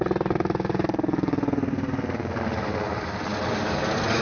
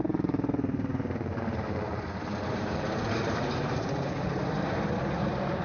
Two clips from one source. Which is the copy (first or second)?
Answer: second